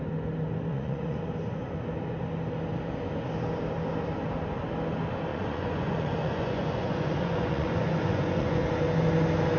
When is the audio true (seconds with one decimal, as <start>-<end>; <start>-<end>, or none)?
0.0-0.7; 1.2-5.3; 8.7-9.6